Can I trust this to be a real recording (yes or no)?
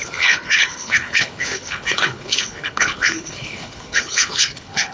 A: no